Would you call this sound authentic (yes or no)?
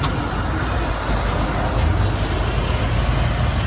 yes